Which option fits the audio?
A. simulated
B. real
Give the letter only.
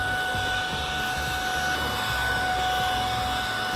B